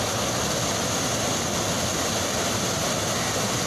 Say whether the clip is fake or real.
real